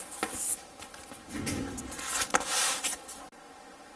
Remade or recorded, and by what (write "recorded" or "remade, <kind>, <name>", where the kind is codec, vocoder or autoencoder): recorded